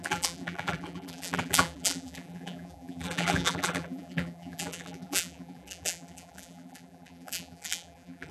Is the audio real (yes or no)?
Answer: no